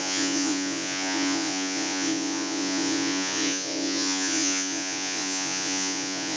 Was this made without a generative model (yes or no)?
no